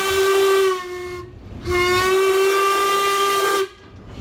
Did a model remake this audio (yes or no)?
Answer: no